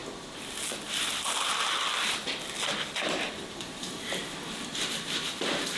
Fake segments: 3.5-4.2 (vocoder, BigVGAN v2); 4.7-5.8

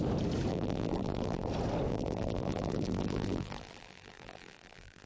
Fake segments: 0.5-1.5 (vocoder, BigVGAN v2); 1.9-5.1

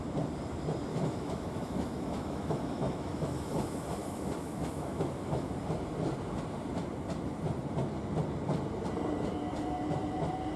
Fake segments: 0.9-5.5 (autoencoder, DAC-VAE)